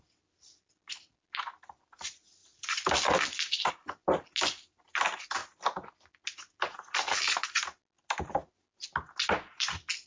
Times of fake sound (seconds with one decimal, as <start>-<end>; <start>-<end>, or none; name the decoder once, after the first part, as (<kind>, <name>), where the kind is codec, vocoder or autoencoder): none